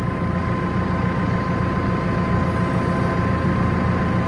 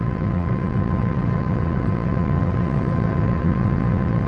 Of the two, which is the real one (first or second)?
first